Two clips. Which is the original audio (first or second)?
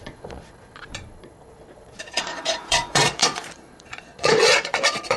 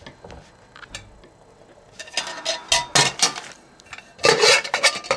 second